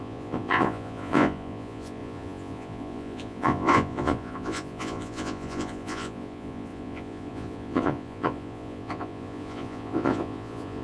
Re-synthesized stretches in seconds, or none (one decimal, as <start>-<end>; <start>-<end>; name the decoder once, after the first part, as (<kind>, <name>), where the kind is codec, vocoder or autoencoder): 0.0-10.8 (vocoder, Vocos)